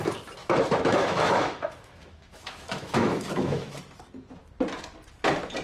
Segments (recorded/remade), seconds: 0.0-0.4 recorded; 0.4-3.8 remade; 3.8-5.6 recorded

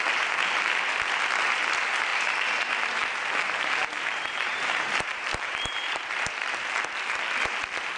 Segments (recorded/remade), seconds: 0.0-2.1 recorded; 2.1-6.4 remade; 6.4-8.0 recorded

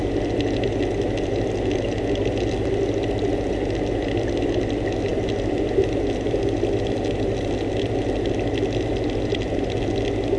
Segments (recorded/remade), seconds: 0.0-10.4 recorded

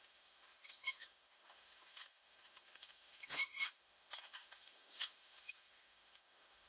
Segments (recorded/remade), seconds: 0.0-6.7 remade

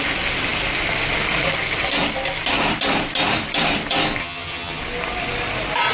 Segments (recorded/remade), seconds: 0.0-4.2 recorded; 4.2-4.8 remade; 4.8-5.9 recorded

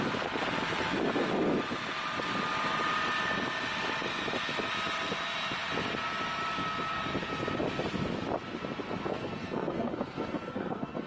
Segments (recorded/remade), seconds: 0.0-9.1 recorded; 9.1-11.1 remade

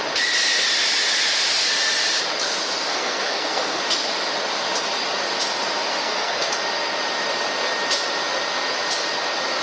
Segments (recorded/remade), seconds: 0.0-2.9 recorded; 2.9-3.8 remade; 3.8-5.9 recorded; 5.9-6.5 remade; 6.5-9.6 recorded